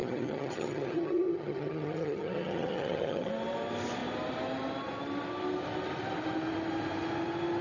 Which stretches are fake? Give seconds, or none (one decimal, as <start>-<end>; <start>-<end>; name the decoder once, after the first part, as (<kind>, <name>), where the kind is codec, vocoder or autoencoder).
0.0-3.3 (vocoder, HiFi-GAN)